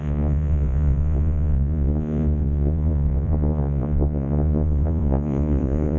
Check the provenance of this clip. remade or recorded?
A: remade